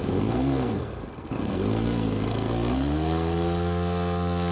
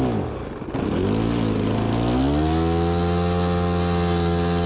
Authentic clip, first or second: second